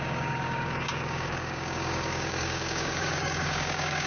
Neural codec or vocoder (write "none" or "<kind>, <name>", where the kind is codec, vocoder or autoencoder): codec, DAC